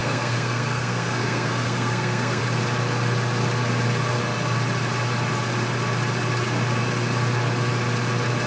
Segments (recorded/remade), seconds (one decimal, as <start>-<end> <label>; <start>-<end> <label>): 0.0-2.4 remade; 2.4-8.5 recorded